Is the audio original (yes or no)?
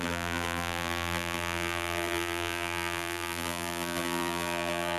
no